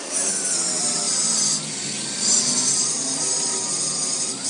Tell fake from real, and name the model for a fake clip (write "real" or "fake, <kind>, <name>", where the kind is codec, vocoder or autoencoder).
real